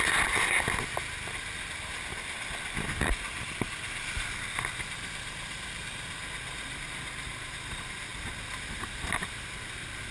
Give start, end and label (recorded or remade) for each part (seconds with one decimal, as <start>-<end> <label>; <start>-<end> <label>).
0.0-10.1 recorded